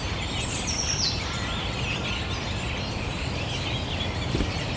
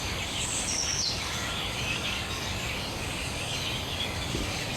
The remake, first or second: second